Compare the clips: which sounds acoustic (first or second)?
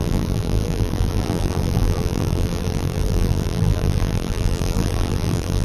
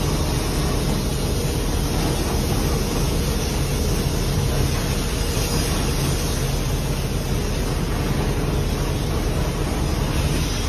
second